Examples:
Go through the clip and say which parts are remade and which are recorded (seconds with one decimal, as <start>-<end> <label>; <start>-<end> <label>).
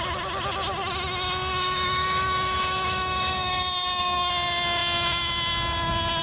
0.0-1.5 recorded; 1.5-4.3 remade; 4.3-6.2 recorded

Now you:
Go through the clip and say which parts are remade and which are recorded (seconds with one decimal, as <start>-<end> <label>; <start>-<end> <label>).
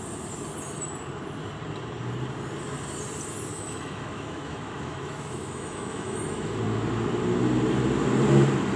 0.0-3.5 recorded; 3.5-6.6 remade; 6.6-8.8 recorded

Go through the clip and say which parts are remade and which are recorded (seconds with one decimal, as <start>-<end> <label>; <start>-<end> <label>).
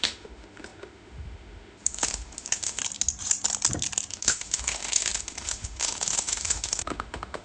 0.0-2.8 remade; 2.8-4.1 recorded; 4.1-7.4 remade